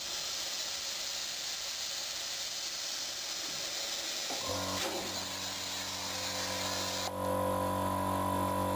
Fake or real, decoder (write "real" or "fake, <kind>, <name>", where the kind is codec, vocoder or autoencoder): real